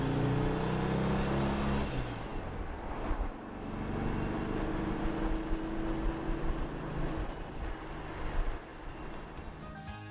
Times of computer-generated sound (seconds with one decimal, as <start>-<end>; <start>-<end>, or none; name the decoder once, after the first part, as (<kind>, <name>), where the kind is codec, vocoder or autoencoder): none